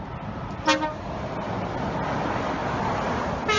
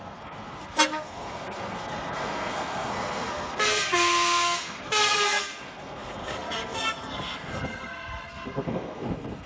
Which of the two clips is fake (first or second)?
second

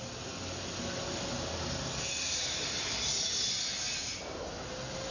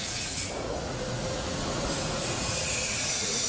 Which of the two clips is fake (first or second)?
second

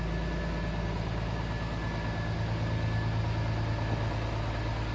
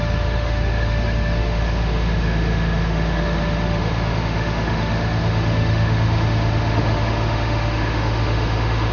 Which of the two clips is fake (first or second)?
second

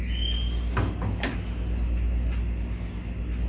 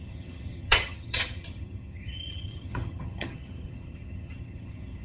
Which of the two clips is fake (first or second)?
second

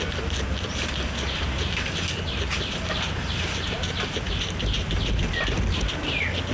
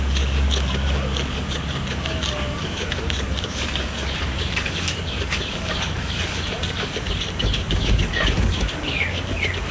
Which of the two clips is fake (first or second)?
second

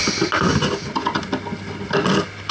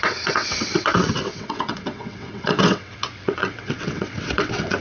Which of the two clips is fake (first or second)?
second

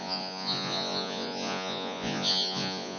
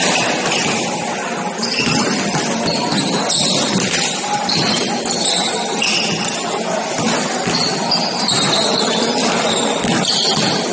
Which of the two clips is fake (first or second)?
first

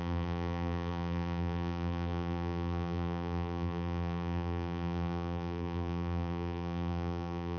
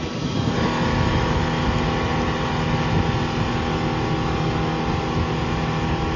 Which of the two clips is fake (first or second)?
first